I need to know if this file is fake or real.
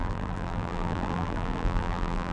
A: fake